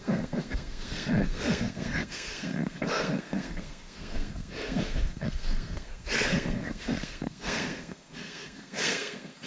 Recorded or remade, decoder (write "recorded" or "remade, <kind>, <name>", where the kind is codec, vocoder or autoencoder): remade, codec, SNAC